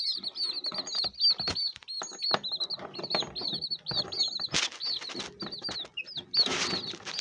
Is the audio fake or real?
real